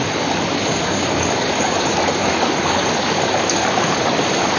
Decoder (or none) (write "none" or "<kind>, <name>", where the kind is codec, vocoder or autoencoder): codec, DAC